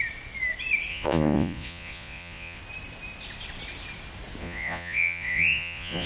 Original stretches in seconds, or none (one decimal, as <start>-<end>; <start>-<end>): 0.0-0.9; 2.6-4.4